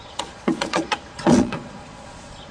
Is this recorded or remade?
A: remade